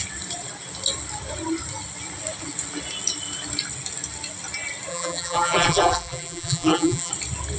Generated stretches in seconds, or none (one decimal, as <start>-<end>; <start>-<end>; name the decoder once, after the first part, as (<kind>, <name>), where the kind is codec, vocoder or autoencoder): 4.9-7.1 (vocoder, BigVGAN v2)